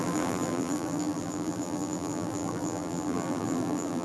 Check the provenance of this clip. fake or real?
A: fake